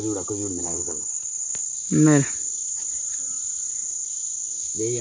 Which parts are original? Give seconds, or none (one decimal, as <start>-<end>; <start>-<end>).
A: 0.0-0.6; 1.5-5.0